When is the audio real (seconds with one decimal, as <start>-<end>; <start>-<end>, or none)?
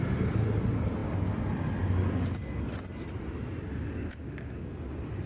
0.0-4.1; 4.7-5.3